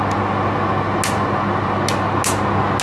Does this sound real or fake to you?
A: real